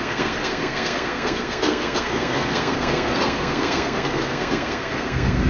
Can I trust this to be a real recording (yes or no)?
no